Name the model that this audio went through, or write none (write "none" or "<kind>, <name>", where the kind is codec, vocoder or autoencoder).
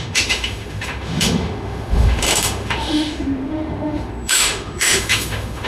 autoencoder, DAC-VAE